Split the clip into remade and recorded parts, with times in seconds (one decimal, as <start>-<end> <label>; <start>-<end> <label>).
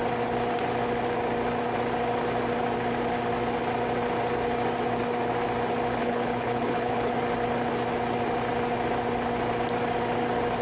0.0-6.0 recorded; 6.0-7.1 remade; 7.1-10.6 recorded